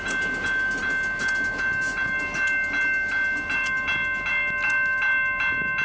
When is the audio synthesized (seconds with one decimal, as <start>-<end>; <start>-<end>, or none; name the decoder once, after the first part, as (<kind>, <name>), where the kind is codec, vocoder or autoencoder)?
none